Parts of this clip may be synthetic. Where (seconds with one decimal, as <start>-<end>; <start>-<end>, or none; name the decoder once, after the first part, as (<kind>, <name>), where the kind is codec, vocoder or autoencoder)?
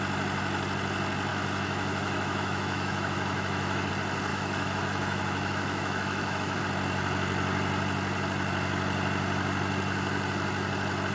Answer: 1.3-3.9 (autoencoder, DAC-VAE); 4.3-6.6